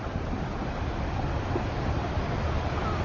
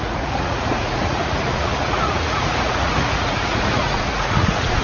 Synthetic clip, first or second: second